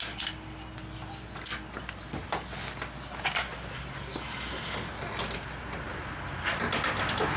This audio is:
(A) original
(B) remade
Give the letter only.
A